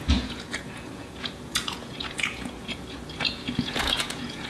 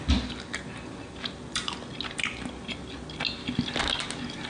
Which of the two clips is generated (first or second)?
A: first